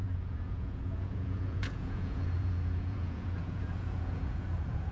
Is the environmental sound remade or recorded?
remade